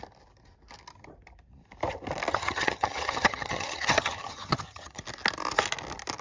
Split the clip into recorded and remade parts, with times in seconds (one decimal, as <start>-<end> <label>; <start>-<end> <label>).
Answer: 0.0-2.3 recorded; 2.3-5.0 remade; 5.0-6.2 recorded